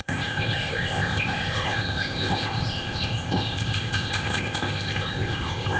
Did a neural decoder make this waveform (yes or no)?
yes